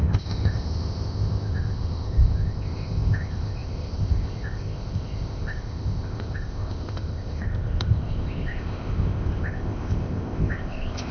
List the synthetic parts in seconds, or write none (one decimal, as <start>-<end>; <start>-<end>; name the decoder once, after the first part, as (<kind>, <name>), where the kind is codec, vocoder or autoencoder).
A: 0.0-11.1 (codec, ZipCodec)